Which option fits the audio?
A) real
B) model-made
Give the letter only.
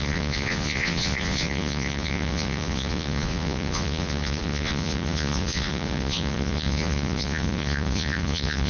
B